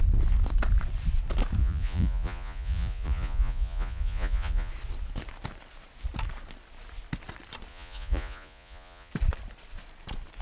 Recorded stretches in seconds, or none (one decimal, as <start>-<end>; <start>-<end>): 0.0-1.6; 4.7-7.7; 9.1-10.4

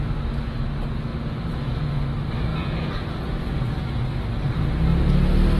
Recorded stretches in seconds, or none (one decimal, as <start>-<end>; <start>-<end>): 0.0-1.1; 2.0-2.5; 3.7-5.6

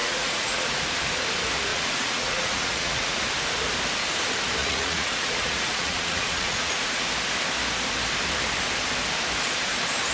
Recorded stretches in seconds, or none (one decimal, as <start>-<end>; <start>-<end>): 0.8-1.7; 3.2-4.6; 7.1-10.1

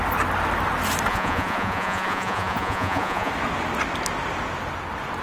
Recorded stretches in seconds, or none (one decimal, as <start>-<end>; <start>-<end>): 0.0-1.1; 3.3-5.2

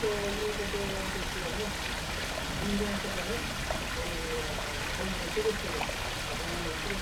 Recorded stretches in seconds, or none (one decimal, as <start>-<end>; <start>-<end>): 0.0-4.0; 4.8-7.0

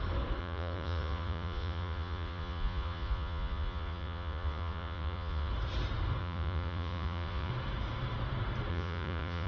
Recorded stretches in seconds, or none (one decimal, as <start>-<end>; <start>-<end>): 0.0-0.4; 5.5-6.2; 7.5-8.7

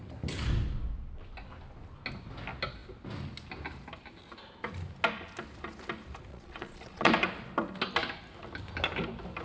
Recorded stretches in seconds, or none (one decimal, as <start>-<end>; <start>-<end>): 0.0-6.3; 7.1-9.4